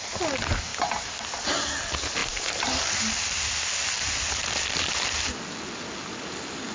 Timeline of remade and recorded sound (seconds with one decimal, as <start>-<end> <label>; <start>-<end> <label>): 0.0-6.7 recorded